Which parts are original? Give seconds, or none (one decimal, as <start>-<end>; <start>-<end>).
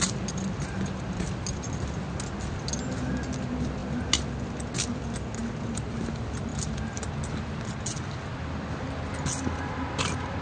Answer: 0.0-5.4; 6.0-6.5; 7.1-10.4